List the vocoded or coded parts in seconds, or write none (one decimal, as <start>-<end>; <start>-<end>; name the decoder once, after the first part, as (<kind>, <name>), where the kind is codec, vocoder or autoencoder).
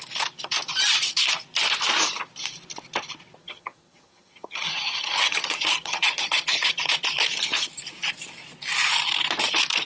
3.4-6.8 (vocoder, HiFi-GAN)